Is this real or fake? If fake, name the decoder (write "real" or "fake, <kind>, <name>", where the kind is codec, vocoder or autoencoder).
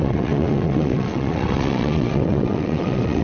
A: fake, vocoder, WaveNeXt